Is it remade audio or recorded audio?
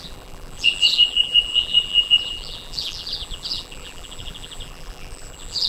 remade